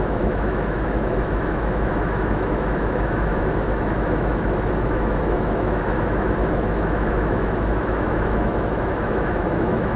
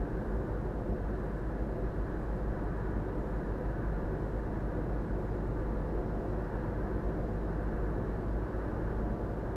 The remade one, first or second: first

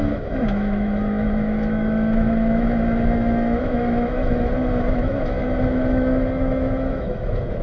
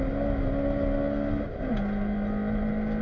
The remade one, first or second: first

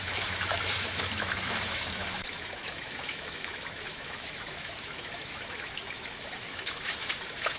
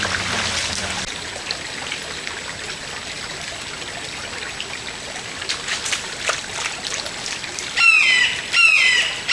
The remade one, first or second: first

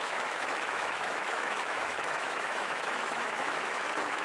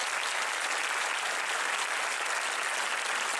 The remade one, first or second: first